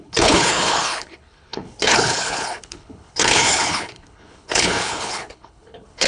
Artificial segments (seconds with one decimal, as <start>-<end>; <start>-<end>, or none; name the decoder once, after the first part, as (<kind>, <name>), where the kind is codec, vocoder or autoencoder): 0.0-6.1 (codec, HILCodec)